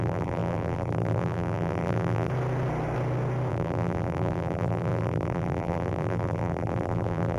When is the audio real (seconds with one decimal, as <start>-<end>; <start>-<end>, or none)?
2.3-3.5